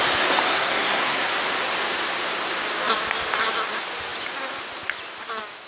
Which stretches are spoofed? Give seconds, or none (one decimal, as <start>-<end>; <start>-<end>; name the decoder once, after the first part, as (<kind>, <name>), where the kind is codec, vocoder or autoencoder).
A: 0.5-1.3 (codec, SNAC)